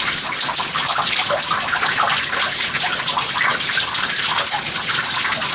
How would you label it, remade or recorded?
remade